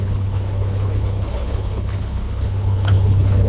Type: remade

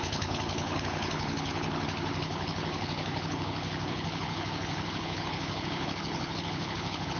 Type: remade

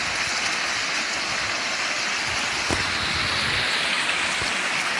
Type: recorded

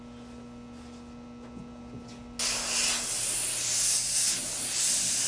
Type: recorded